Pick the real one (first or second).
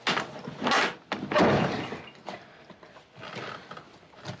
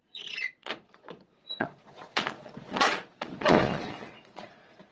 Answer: first